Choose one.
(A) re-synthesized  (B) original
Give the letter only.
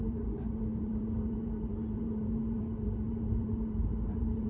A